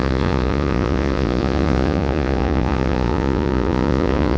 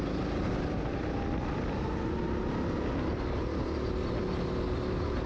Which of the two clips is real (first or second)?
second